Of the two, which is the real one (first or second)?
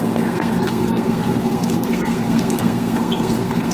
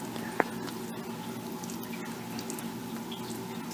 second